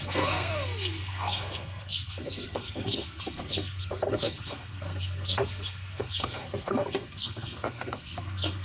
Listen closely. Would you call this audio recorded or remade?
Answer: remade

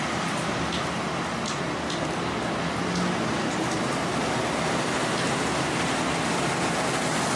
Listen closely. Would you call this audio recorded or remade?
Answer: recorded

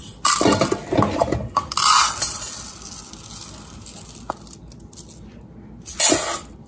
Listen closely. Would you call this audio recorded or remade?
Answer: recorded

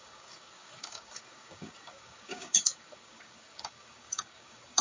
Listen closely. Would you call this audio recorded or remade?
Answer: remade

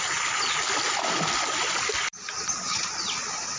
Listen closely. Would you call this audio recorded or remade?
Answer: recorded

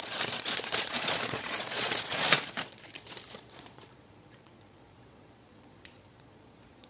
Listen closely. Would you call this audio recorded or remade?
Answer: remade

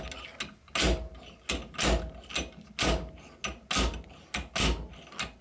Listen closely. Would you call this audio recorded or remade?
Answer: recorded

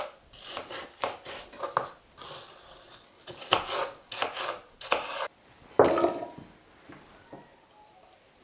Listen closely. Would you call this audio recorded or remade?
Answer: recorded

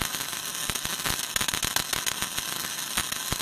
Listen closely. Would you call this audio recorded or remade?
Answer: recorded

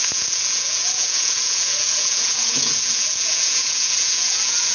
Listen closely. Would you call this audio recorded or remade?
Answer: remade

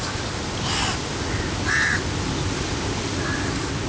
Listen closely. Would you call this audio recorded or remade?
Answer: recorded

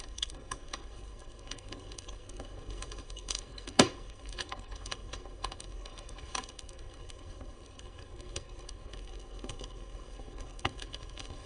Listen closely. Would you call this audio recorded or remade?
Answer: remade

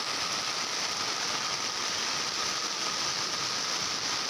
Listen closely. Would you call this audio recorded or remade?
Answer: recorded